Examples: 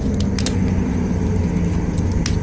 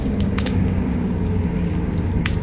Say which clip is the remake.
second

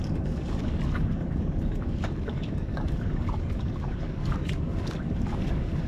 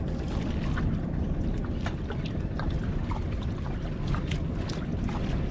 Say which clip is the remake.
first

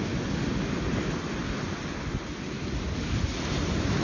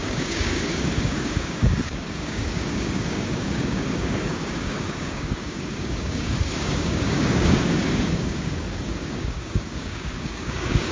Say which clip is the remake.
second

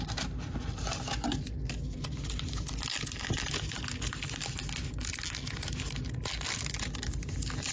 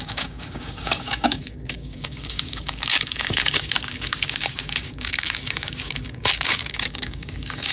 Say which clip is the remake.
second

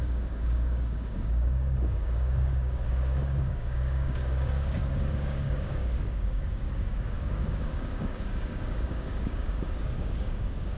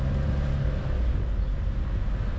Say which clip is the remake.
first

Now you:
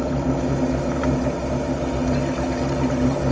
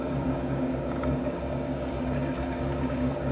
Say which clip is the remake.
second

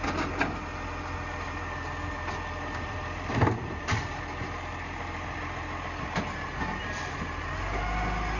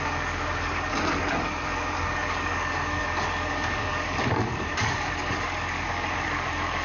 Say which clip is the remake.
second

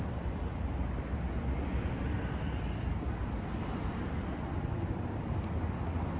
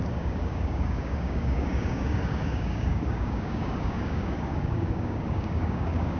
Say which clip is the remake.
second